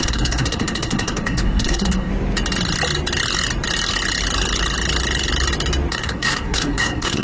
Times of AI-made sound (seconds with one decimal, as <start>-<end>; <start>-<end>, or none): 0.0-2.1; 5.9-7.2